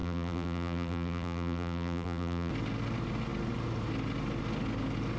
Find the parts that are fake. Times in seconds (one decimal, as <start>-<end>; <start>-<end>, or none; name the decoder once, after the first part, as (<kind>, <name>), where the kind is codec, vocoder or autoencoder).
0.0-2.5 (vocoder, BigVGAN v2)

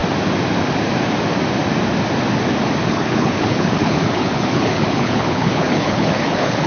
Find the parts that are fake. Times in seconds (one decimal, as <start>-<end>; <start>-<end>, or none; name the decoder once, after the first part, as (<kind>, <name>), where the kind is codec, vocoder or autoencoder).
2.9-6.7 (codec, HILCodec)

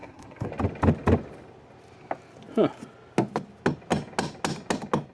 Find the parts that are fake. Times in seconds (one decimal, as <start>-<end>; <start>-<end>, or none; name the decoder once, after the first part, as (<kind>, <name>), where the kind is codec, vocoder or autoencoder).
0.0-0.5 (codec, SNAC)

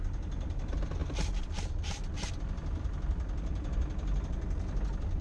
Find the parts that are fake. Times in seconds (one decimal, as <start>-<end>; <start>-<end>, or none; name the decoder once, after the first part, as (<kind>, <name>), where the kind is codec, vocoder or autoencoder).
none